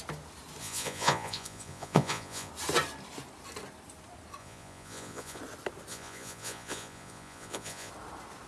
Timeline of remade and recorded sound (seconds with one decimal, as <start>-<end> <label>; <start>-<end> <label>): 0.0-0.6 recorded; 0.6-2.5 remade; 2.5-4.4 recorded; 4.4-5.4 remade; 5.4-5.9 recorded; 5.9-7.9 remade; 7.9-8.5 recorded